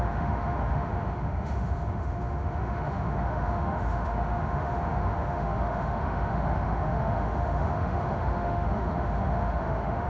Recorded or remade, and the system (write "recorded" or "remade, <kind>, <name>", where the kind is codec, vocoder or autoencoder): remade, autoencoder, DAC-VAE